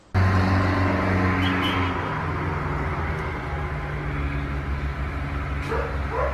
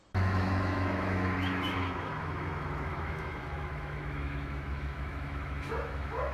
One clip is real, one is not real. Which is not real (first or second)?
second